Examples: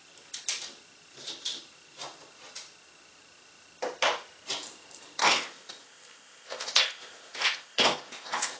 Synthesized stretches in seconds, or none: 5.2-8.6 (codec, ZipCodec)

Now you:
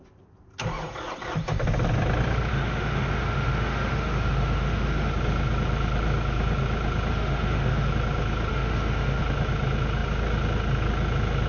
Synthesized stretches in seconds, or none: 2.5-5.1 (autoencoder, DAC-VAE); 7.1-7.9; 8.5-9.2

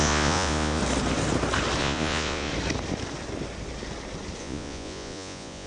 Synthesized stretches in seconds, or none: 0.0-0.8 (vocoder, Vocos); 1.8-2.5; 4.4-5.7

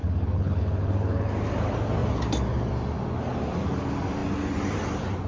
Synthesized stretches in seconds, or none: 0.0-1.3 (codec, HILCodec)

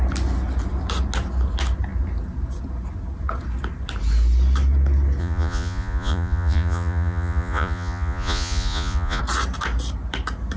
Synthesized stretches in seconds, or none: 5.2-9.2 (vocoder, Vocos)

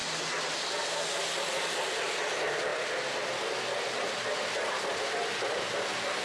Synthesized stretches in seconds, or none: none